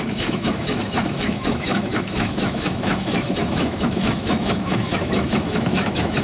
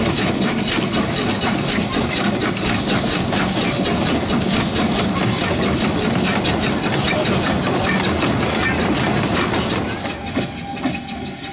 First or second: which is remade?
first